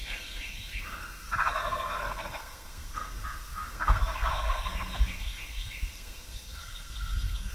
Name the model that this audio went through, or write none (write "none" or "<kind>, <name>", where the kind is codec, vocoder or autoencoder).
codec, SNAC